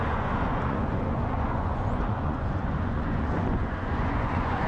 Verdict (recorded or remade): remade